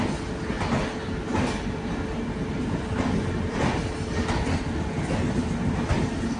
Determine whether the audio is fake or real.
real